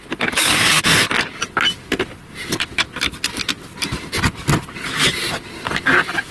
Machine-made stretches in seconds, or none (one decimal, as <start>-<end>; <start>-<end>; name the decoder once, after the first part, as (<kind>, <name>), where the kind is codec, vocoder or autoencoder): 1.3-4.8 (vocoder, BigVGAN v2)